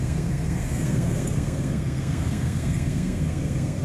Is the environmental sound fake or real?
fake